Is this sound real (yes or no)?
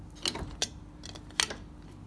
yes